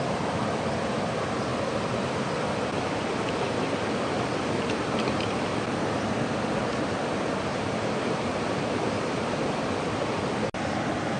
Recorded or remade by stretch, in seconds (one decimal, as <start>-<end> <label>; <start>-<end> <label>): 0.0-7.5 recorded; 7.5-8.9 remade; 8.9-11.2 recorded